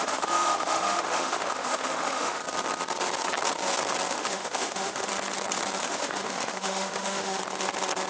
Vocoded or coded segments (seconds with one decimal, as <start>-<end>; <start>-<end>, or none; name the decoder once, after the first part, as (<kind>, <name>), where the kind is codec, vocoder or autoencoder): 0.0-2.4 (autoencoder, DAC-VAE); 4.1-5.1; 5.8-7.4